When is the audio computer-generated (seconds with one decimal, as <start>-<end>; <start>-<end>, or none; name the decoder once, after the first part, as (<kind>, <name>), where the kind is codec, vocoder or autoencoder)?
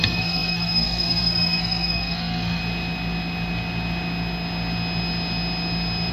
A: 0.0-2.6 (codec, SNAC)